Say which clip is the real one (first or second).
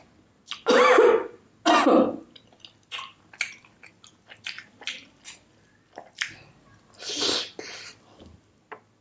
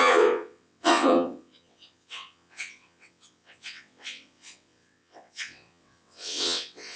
first